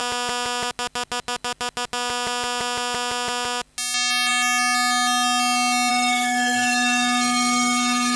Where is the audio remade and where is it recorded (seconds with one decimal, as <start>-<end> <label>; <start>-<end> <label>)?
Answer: 0.0-5.9 recorded; 5.9-8.2 remade